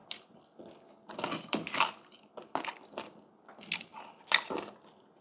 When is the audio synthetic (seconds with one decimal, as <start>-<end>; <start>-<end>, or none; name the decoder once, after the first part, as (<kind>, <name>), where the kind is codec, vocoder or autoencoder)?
none